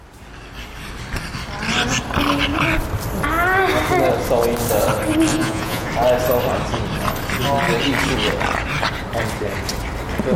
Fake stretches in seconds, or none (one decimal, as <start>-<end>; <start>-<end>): 5.3-5.9